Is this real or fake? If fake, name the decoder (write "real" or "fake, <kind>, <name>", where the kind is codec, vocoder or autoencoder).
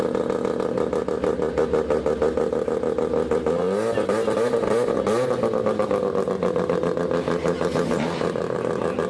real